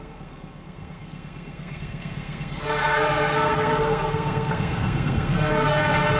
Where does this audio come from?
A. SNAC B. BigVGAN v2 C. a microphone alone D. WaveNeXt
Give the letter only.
A